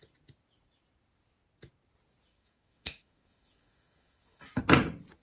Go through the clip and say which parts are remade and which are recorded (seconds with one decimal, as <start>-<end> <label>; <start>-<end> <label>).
0.0-2.3 recorded; 2.3-4.6 remade; 4.6-5.2 recorded